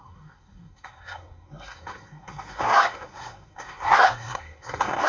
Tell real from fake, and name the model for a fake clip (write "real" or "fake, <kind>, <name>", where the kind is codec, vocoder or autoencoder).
fake, codec, SNAC